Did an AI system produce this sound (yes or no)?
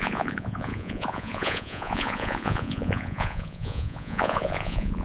yes